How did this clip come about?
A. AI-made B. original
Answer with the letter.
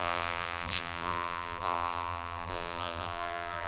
A